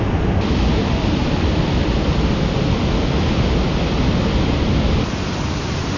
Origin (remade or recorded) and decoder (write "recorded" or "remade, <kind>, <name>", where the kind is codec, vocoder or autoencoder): recorded